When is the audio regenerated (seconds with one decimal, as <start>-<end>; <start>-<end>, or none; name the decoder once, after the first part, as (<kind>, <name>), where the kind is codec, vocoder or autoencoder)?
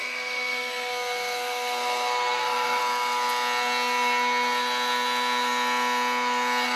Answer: 0.0-2.8 (codec, SNAC)